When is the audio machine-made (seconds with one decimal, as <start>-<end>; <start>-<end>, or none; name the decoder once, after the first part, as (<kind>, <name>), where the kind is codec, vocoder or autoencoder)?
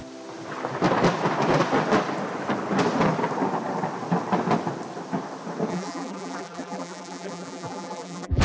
5.7-8.4 (vocoder, BigVGAN v2)